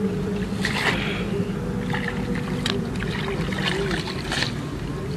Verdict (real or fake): real